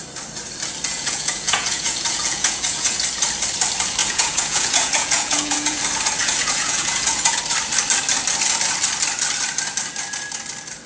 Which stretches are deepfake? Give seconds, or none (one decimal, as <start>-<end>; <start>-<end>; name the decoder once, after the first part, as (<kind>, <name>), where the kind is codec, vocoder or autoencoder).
0.9-3.0 (vocoder, Vocos); 4.0-5.8; 6.2-7.4